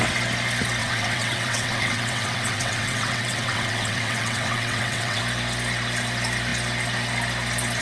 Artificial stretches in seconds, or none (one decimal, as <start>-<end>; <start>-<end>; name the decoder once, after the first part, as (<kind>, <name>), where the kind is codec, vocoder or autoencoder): 0.8-5.2 (vocoder, WaveNeXt)